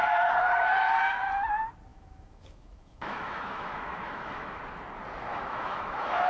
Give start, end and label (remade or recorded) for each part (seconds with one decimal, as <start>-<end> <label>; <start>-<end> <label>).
0.0-1.9 recorded; 1.9-4.6 remade; 4.6-5.3 recorded; 5.3-6.3 remade